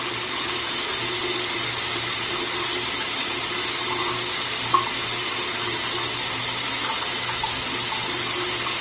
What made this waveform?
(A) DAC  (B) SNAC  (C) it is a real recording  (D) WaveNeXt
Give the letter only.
C